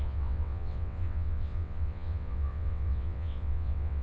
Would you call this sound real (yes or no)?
no